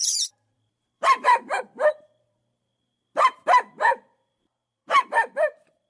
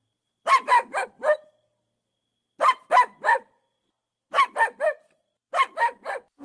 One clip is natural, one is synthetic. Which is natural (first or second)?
second